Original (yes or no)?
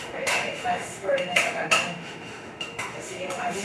no